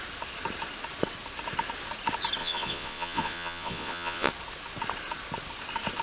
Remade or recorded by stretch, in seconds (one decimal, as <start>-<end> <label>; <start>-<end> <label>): 0.0-2.4 recorded; 2.4-4.3 remade; 4.3-6.0 recorded